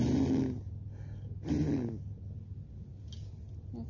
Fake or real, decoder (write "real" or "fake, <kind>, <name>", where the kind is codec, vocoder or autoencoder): real